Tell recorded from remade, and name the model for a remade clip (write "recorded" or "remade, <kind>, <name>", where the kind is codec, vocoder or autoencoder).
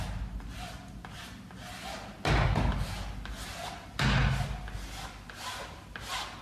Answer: recorded